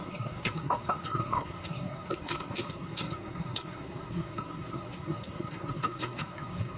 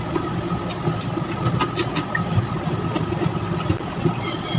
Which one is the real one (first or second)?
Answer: second